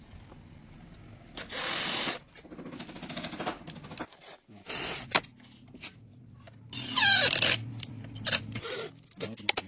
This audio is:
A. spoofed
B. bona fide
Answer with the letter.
B